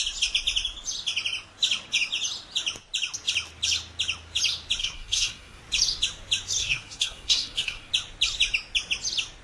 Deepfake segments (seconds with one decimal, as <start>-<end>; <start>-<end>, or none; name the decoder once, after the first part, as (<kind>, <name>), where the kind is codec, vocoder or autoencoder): 4.8-5.6 (codec, SNAC); 6.6-7.9